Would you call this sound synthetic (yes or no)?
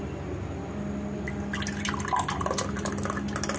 no